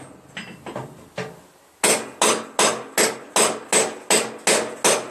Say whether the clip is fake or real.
real